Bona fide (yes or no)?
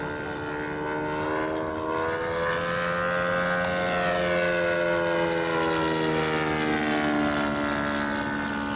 yes